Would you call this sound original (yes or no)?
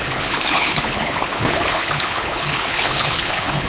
no